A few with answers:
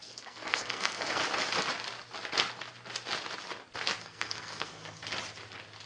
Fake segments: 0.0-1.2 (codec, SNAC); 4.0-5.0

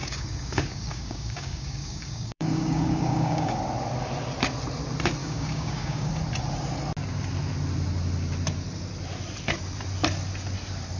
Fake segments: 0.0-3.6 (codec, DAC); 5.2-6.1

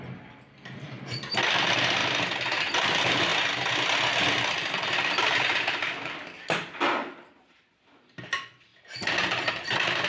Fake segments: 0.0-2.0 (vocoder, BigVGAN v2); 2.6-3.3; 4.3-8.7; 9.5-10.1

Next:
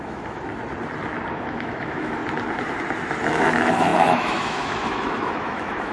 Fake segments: 0.0-0.5 (autoencoder, DAC-VAE); 1.3-2.2; 3.3-5.9

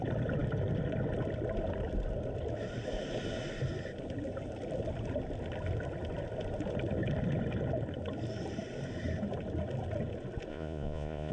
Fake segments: 10.5-11.3 (vocoder, Vocos)